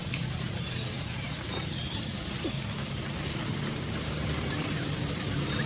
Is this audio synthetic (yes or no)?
yes